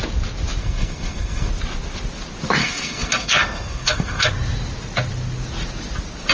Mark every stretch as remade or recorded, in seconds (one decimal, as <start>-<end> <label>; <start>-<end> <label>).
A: 0.0-0.6 recorded; 0.6-1.5 remade; 1.5-2.6 recorded; 2.6-4.3 remade; 4.3-6.3 recorded